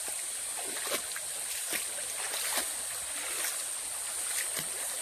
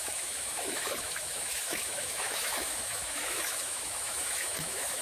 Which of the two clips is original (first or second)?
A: first